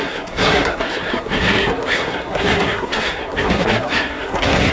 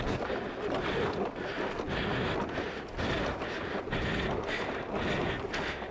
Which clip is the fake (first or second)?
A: first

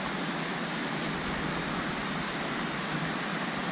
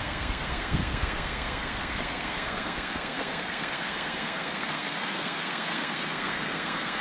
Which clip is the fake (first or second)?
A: second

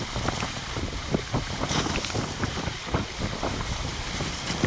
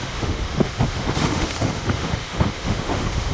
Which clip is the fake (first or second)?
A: second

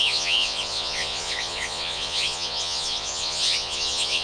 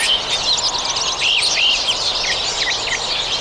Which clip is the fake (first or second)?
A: first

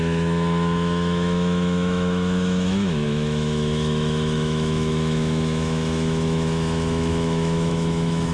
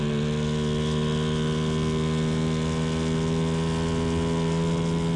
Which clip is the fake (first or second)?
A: first